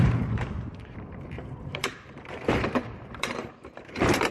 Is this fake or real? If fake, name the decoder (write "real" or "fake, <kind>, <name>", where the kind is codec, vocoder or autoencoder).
fake, vocoder, BigVGAN v2